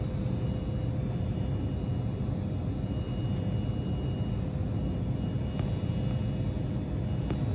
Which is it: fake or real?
real